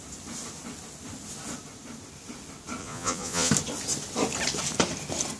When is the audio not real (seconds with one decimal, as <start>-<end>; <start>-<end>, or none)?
2.8-3.5